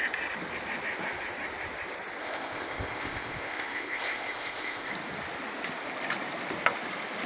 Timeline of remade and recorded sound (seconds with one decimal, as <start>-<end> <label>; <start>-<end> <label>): 0.0-2.2 recorded; 2.2-4.9 remade; 4.9-7.3 recorded